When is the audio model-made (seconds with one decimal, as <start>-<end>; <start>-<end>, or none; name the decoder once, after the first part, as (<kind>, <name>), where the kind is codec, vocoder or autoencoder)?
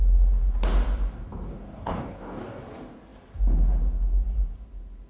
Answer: 1.5-2.6 (codec, DAC)